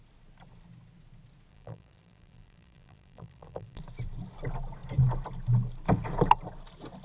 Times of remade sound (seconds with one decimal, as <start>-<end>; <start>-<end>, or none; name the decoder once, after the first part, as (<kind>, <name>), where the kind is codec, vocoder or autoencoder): 1.5-3.8 (vocoder, BigVGAN v2)